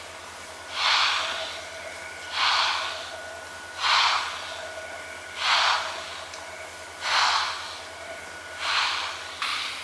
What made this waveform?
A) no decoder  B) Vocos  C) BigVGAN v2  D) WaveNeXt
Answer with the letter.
A